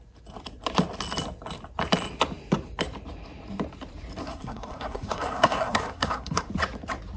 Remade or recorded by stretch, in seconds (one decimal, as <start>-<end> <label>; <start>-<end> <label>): 0.0-4.2 recorded; 4.2-6.5 remade; 6.5-7.2 recorded